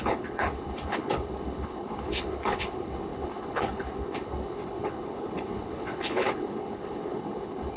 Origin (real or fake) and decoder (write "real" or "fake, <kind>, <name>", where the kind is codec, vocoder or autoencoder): fake, codec, HILCodec